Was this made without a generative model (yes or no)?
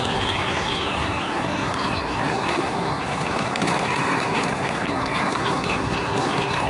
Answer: no